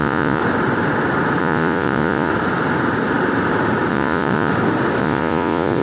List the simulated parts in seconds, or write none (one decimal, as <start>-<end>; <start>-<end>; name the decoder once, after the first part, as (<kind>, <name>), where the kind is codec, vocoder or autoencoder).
0.0-0.4 (vocoder, Vocos); 1.4-2.3; 3.9-4.5; 5.0-5.8